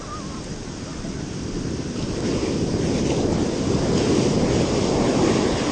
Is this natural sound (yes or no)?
yes